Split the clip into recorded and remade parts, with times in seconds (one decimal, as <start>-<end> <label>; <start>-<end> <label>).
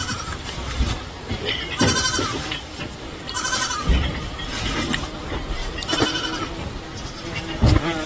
0.0-5.6 remade; 5.6-8.1 recorded